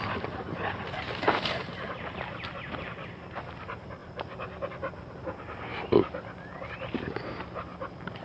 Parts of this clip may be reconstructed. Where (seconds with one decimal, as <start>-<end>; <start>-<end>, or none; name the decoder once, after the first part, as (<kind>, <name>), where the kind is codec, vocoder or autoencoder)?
none